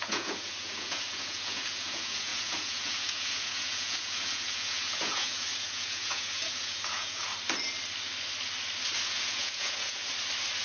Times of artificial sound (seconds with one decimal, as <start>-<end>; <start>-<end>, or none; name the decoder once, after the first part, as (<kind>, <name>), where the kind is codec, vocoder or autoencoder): 0.0-7.3 (vocoder, Vocos); 9.0-10.0